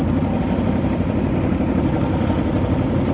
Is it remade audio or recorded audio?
recorded